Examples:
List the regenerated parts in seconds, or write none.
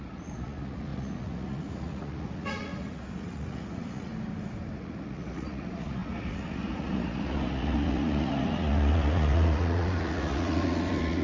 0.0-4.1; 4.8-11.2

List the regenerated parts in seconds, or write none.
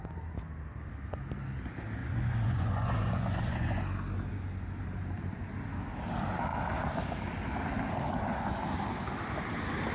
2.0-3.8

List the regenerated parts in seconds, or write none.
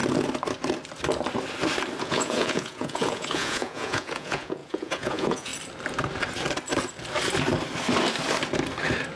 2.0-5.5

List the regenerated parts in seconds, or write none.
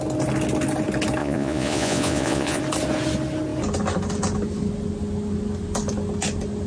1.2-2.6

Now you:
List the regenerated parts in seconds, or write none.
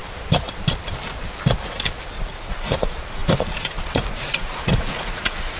2.2-5.6